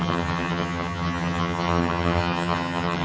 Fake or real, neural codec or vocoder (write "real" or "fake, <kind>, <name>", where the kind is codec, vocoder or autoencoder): fake, vocoder, HiFi-GAN